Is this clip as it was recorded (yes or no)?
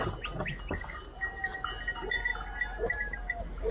yes